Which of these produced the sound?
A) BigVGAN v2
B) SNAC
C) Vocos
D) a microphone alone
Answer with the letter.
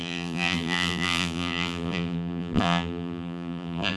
A